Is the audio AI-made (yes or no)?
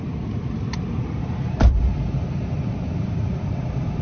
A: yes